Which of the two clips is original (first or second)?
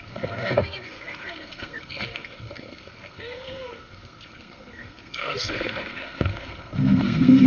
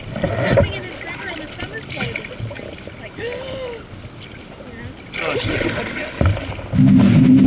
second